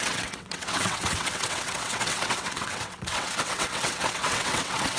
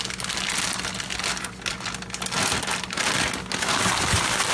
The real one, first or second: second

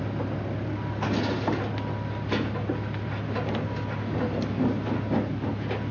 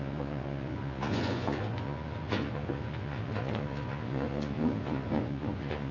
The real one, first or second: first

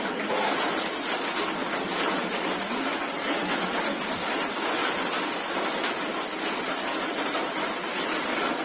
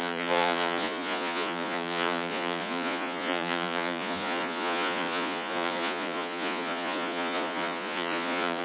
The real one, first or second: first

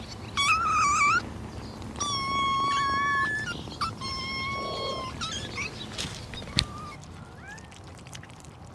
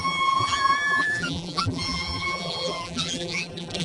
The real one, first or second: first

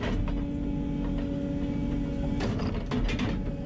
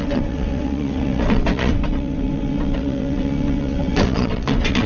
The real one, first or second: first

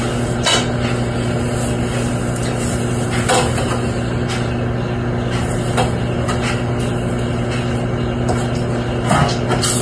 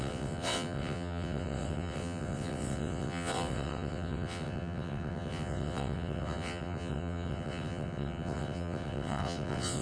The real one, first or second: first